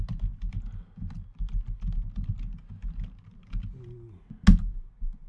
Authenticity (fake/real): real